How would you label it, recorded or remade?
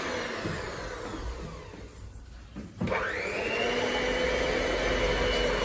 recorded